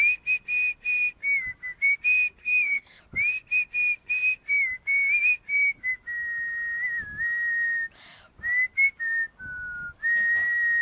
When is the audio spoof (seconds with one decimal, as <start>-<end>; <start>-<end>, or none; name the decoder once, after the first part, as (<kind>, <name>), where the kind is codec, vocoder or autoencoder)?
2.4-3.0 (codec, SNAC)